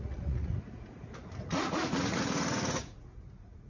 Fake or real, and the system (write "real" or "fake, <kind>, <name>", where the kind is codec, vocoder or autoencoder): fake, vocoder, Vocos